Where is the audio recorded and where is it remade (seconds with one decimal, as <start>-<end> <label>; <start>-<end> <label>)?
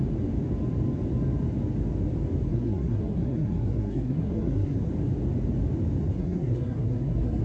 0.0-2.5 recorded; 2.5-4.9 remade; 4.9-6.0 recorded; 6.0-7.4 remade